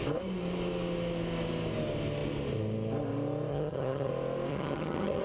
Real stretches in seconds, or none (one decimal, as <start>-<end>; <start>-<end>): 0.0-3.5; 4.1-4.5